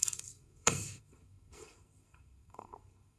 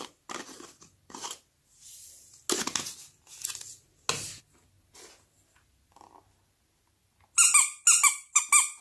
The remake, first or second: first